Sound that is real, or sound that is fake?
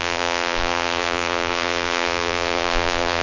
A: fake